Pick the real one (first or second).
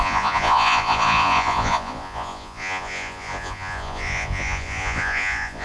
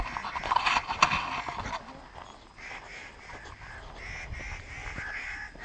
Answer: second